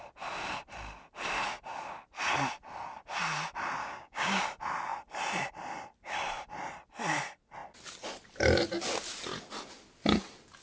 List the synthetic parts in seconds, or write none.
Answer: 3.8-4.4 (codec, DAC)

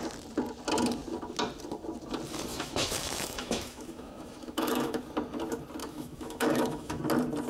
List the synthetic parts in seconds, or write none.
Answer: 2.5-5.0 (autoencoder, DAC-VAE); 5.8-7.0

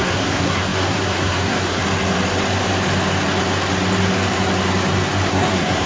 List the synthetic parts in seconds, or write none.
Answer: 0.0-1.8 (codec, SNAC); 5.3-5.9

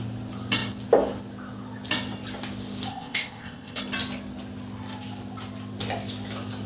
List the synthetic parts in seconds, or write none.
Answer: 2.9-3.8 (codec, ZipCodec)

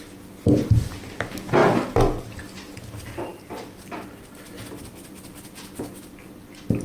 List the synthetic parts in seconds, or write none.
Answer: none